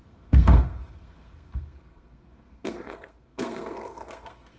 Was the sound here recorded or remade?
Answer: remade